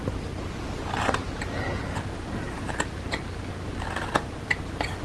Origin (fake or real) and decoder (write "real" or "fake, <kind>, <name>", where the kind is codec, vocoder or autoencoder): real